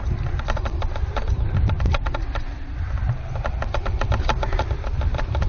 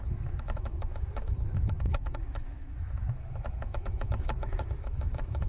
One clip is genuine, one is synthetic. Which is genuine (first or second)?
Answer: first